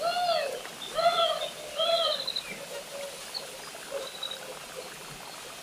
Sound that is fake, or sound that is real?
real